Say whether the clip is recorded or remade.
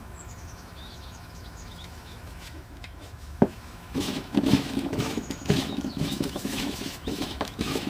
remade